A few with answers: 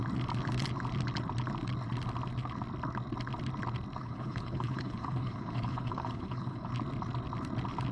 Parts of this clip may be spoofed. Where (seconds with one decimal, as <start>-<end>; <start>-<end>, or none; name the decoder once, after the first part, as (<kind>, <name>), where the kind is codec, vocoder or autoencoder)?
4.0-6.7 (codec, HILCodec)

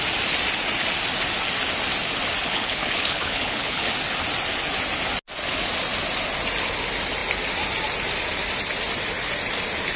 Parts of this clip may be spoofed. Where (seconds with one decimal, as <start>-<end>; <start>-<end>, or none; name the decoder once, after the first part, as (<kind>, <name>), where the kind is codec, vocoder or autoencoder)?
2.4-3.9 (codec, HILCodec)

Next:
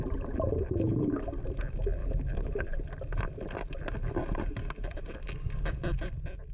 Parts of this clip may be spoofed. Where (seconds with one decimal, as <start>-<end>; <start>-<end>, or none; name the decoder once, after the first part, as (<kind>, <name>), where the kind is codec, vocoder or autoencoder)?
0.5-1.2 (codec, HILCodec); 2.0-2.8

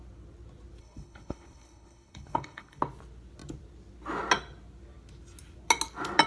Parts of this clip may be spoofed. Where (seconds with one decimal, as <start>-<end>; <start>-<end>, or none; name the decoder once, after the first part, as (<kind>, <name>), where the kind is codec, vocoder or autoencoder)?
0.8-2.8 (codec, HILCodec)

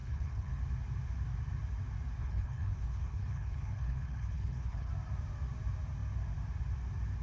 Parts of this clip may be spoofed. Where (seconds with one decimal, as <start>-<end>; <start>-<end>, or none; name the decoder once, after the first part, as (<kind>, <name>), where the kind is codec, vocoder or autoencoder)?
0.0-0.6 (codec, HILCodec); 2.2-4.9